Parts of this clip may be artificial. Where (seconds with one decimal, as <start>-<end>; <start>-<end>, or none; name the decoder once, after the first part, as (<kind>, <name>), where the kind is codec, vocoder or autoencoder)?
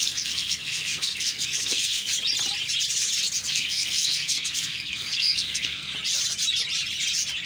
0.0-2.1 (codec, SNAC); 3.5-5.9